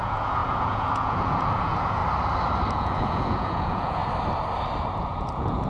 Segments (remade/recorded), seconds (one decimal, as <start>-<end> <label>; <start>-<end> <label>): 0.0-2.0 remade; 2.0-2.7 recorded; 2.7-4.0 remade; 4.0-5.0 recorded; 5.0-5.7 remade